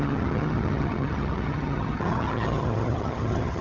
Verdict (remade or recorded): remade